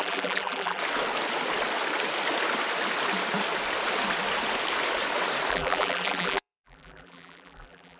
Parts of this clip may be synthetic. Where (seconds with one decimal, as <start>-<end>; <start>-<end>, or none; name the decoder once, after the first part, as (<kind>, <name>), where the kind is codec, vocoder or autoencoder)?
0.0-0.8 (vocoder, BigVGAN v2); 5.5-8.0